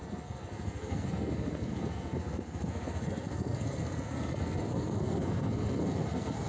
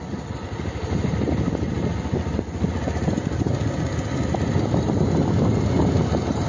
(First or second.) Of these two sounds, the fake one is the first